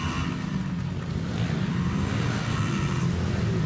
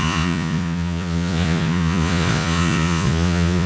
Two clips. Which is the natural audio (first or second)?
first